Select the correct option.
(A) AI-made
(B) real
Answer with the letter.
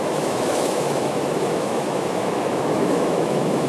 A